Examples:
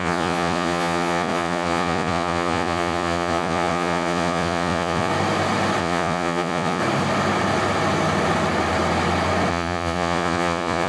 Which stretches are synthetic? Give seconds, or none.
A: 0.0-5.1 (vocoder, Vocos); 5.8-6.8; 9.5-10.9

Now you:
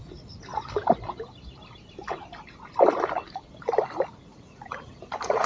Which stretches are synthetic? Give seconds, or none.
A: 4.3-5.5 (vocoder, Vocos)

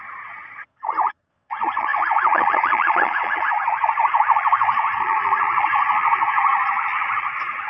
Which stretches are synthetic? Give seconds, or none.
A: 0.0-7.7 (vocoder, Vocos)

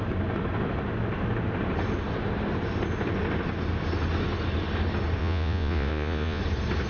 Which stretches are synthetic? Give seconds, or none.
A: 5.2-6.4 (vocoder, Vocos)